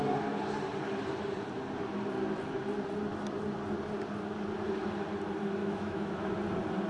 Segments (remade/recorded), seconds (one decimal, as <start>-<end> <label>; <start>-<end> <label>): 0.0-5.6 recorded; 5.6-6.3 remade; 6.3-6.9 recorded